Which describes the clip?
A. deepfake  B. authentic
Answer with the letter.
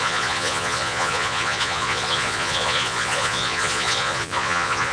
A